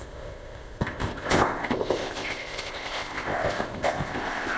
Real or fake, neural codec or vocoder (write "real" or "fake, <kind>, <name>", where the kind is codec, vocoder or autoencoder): fake, codec, ZipCodec